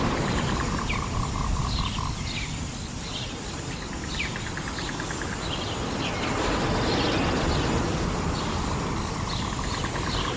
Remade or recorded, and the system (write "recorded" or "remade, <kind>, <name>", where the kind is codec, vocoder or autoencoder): recorded